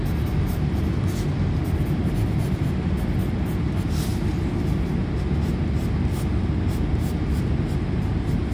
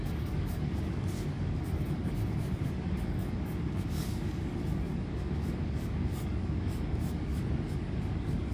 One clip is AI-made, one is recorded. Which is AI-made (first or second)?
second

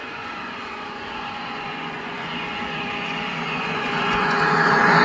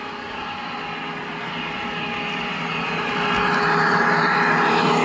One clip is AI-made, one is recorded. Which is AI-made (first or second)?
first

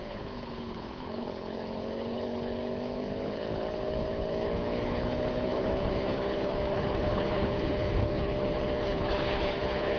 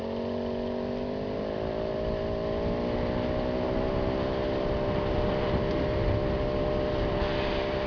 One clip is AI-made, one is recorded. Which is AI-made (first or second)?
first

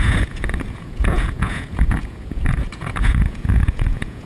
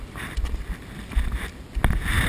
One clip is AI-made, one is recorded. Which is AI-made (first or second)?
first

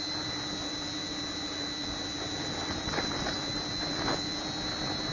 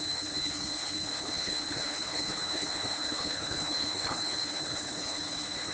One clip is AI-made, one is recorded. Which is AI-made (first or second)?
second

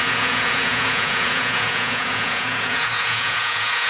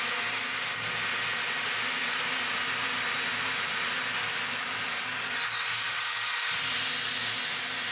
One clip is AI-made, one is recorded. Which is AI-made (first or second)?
first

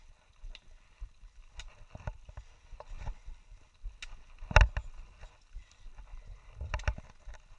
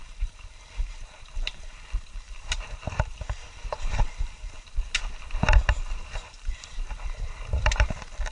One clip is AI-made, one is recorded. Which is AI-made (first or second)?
second